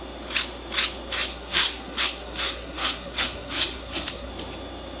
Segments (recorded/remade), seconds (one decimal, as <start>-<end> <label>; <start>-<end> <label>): 0.0-1.3 recorded; 1.3-4.3 remade; 4.3-5.0 recorded